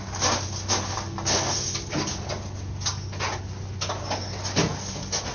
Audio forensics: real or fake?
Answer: real